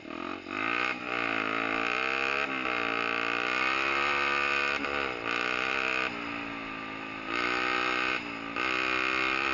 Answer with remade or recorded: recorded